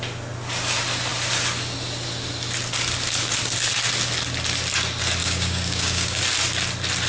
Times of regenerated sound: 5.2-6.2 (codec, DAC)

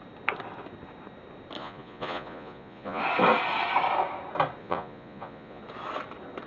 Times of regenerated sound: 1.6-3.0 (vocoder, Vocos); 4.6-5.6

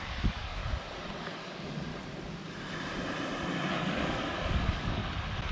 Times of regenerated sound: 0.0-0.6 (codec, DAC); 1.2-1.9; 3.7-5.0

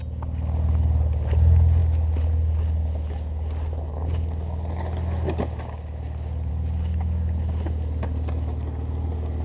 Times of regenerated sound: none

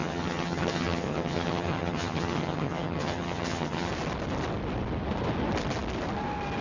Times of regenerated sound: 0.0-3.9 (vocoder, HiFi-GAN)

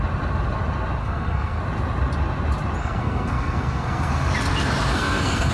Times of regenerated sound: 1.0-1.6 (codec, SNAC); 2.8-4.3; 4.9-5.5

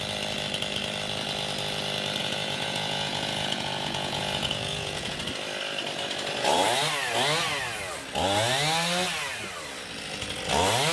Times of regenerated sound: 2.2-5.2 (vocoder, Vocos)

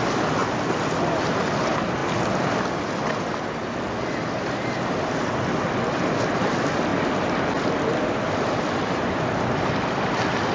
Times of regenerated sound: none